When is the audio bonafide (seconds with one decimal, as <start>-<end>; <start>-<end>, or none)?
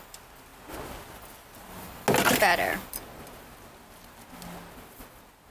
0.0-5.5